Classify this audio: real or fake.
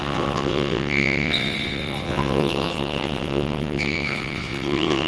fake